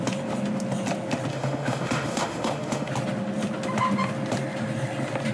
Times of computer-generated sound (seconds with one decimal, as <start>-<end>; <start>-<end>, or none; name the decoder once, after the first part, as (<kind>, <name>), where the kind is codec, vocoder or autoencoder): 1.3-2.9 (autoencoder, DAC-VAE)